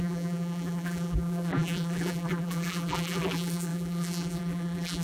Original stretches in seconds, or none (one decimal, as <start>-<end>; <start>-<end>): none

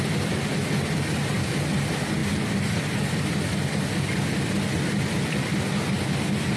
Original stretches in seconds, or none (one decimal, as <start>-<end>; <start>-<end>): 0.0-6.6

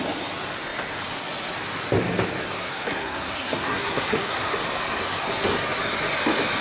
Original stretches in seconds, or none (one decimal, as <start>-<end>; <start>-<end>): 0.0-2.6; 4.5-6.6

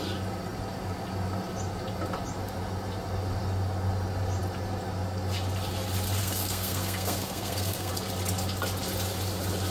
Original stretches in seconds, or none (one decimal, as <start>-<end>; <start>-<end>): 0.0-6.2; 7.9-9.7

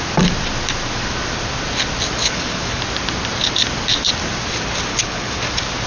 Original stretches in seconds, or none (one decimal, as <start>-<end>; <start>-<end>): 0.0-2.2; 2.8-4.9; 5.4-5.9

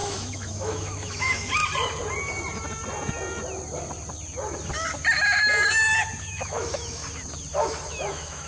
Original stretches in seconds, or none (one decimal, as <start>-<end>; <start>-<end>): 1.6-6.2; 7.0-7.9

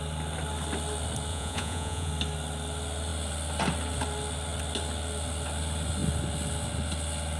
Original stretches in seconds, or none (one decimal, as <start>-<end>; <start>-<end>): 0.0-1.3; 2.1-7.4

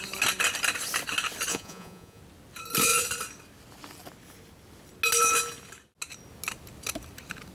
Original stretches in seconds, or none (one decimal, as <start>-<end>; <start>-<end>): 0.0-1.5; 2.2-7.5